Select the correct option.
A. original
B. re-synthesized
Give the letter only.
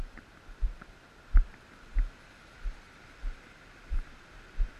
B